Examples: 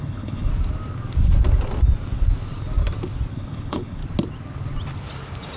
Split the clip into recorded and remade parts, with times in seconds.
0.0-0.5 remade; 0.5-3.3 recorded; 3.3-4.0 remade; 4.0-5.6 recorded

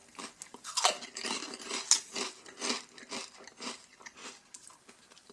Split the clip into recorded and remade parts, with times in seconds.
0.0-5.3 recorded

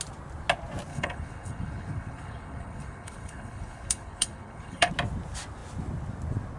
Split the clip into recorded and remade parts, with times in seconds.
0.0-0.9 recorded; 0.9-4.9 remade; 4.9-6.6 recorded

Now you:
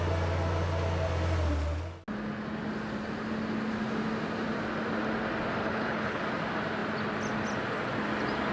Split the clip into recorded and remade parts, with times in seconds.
0.0-5.6 recorded; 5.6-6.2 remade; 6.2-8.5 recorded

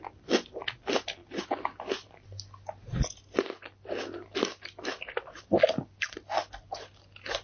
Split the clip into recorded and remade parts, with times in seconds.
0.0-7.4 recorded